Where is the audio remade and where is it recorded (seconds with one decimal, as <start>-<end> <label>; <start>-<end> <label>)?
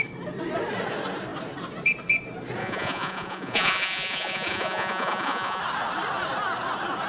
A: 0.0-2.6 recorded; 2.6-5.6 remade; 5.6-7.1 recorded